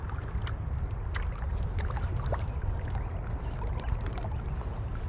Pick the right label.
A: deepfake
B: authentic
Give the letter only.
B